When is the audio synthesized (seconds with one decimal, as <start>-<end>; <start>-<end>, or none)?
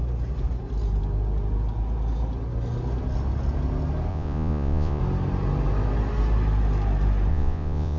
4.1-5.0; 7.3-8.0